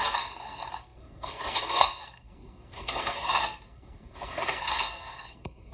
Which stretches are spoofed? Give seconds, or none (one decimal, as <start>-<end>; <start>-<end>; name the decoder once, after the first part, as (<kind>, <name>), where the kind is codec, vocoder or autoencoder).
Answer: 0.0-5.7 (codec, SNAC)